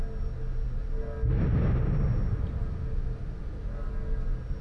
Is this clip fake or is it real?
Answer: real